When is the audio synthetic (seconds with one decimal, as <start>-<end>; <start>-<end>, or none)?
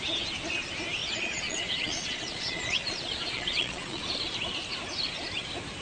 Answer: 1.0-4.0